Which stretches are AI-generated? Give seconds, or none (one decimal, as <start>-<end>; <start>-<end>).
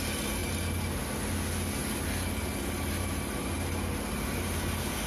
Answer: none